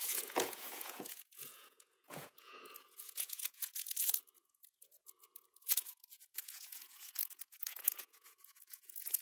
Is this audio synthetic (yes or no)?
yes